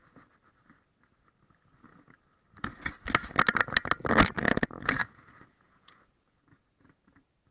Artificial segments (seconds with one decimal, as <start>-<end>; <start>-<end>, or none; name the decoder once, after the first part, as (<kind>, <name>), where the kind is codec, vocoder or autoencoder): 5.0-6.4 (vocoder, Vocos)